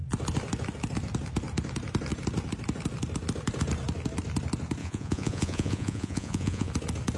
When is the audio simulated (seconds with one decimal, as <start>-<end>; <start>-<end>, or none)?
4.8-6.7